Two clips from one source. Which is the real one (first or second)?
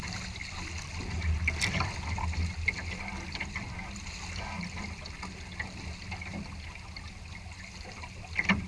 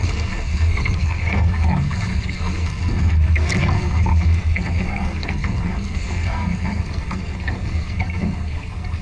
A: first